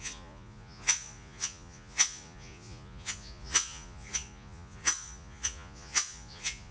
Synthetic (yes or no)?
yes